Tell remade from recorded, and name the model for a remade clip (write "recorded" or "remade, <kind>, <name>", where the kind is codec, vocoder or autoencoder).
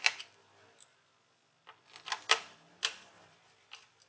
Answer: recorded